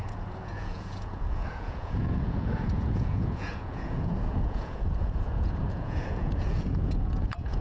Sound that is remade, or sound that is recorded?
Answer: remade